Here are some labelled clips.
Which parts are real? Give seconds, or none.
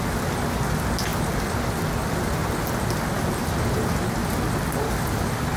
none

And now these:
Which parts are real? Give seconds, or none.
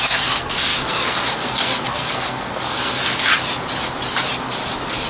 3.0-5.1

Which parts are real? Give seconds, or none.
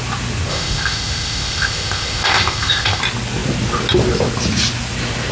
0.0-0.5; 3.0-5.3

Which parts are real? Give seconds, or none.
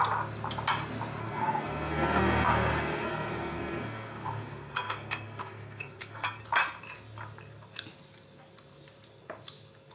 0.0-1.2; 6.4-9.9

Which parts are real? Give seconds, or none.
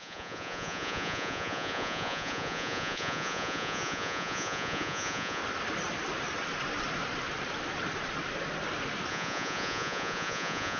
5.4-9.1